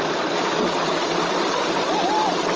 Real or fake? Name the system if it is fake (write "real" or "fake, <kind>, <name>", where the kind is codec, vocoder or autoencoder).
real